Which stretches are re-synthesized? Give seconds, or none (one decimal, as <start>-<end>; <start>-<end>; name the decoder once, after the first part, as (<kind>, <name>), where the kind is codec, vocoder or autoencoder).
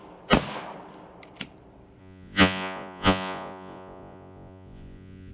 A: 2.0-5.3 (vocoder, Vocos)